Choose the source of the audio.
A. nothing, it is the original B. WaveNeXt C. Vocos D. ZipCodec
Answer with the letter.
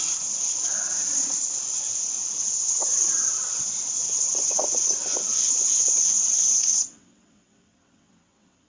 B